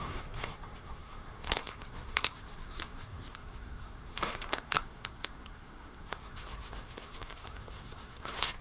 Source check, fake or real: fake